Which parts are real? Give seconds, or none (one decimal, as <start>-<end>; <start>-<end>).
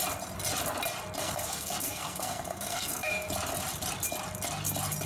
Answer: 0.0-1.2; 3.3-5.1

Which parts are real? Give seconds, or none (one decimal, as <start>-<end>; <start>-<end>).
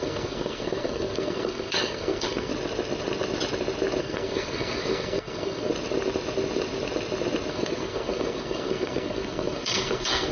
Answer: 2.5-4.0; 5.7-7.5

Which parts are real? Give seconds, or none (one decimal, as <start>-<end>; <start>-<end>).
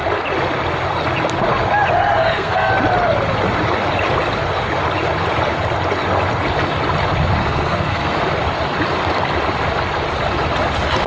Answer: 0.0-2.2; 2.7-7.4; 8.2-11.1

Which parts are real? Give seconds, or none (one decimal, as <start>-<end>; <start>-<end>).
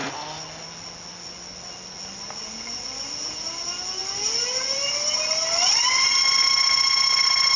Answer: 0.0-7.6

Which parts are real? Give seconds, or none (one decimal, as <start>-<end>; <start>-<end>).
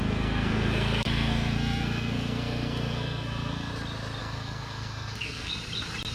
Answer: 3.7-4.2; 5.5-6.1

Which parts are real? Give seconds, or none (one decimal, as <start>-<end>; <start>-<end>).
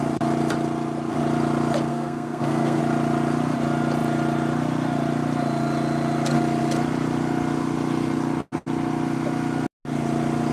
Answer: 0.0-1.9; 2.8-10.5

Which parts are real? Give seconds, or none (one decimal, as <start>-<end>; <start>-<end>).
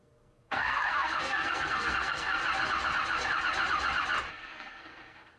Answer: 2.4-4.3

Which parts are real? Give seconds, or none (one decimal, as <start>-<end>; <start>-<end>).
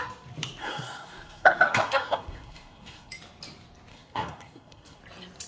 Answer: 0.0-0.6; 3.1-3.9; 5.0-5.5